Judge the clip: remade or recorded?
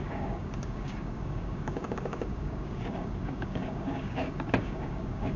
remade